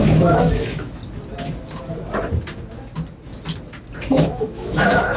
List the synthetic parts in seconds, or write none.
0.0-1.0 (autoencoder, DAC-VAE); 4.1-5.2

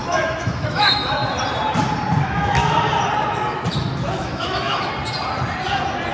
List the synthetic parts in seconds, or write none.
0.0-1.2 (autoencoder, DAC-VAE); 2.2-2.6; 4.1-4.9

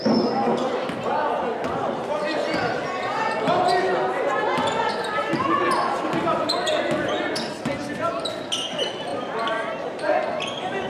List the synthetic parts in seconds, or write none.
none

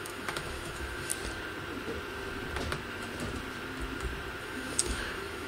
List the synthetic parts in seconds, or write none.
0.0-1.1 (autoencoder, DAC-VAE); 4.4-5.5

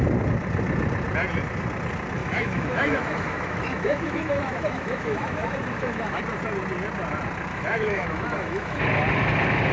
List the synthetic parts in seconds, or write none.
2.2-6.2 (autoencoder, DAC-VAE); 7.5-8.8

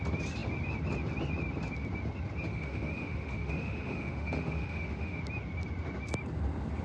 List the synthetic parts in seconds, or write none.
2.5-5.2 (autoencoder, DAC-VAE)

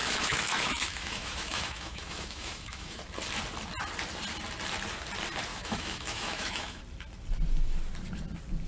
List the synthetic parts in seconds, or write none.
0.0-3.0 (autoencoder, DAC-VAE); 5.5-6.8